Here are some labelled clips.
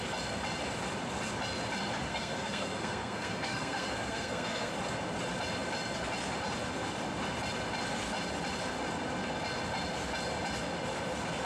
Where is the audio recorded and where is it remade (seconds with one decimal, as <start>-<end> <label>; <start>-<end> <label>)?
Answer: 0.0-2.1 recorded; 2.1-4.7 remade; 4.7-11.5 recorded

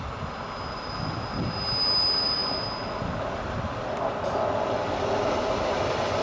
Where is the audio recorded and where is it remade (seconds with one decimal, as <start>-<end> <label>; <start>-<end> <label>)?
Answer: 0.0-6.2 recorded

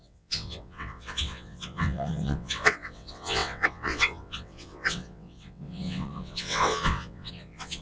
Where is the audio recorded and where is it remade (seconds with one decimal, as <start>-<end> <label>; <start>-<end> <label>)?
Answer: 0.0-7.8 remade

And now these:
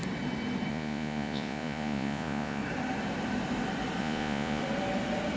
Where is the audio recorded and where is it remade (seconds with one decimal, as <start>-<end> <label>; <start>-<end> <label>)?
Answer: 0.0-0.7 recorded; 0.7-2.6 remade; 2.6-4.0 recorded; 4.0-4.6 remade; 4.6-5.4 recorded

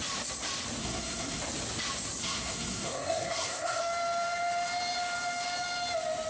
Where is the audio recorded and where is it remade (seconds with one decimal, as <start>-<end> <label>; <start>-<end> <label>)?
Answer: 0.0-0.8 recorded; 0.8-1.4 remade; 1.4-2.2 recorded; 2.2-3.8 remade; 3.8-6.3 recorded

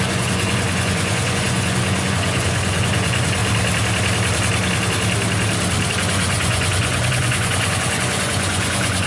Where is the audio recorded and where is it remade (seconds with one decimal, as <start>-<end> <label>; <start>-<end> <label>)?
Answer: 0.0-3.4 remade; 3.4-5.9 recorded; 5.9-9.1 remade